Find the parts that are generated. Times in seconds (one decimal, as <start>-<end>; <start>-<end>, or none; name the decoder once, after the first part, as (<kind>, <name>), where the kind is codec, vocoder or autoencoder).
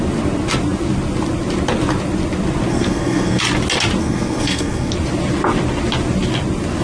2.7-3.4 (codec, SNAC); 4.0-4.9